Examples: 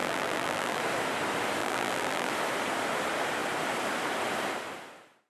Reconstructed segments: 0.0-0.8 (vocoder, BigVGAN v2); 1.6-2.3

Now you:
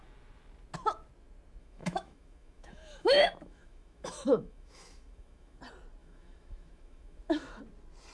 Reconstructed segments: 1.6-5.6 (autoencoder, DAC-VAE); 6.0-7.6